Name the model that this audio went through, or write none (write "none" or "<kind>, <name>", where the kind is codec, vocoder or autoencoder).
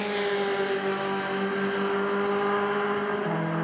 none